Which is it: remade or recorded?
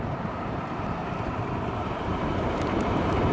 remade